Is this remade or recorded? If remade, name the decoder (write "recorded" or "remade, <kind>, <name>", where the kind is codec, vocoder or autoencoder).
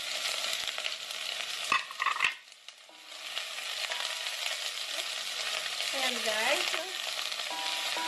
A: recorded